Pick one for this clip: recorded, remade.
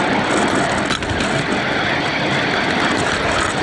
recorded